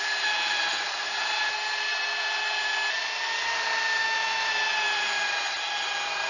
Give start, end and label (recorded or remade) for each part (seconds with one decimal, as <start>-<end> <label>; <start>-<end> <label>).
0.0-4.0 recorded; 4.0-4.5 remade; 4.5-6.3 recorded